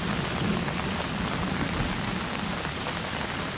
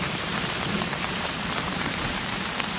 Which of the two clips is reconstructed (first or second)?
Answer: second